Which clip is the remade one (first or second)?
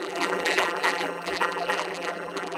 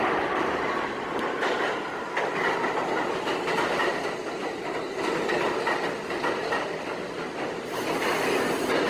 first